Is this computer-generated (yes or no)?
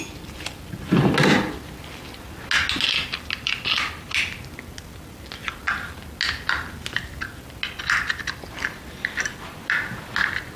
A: no